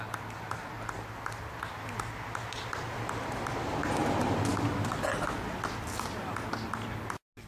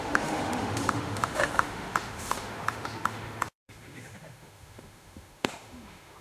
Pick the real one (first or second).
first